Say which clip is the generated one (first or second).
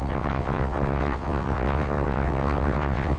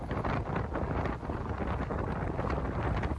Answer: first